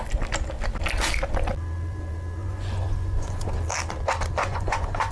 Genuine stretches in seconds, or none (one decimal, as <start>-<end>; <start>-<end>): 0.0-2.4; 3.5-4.4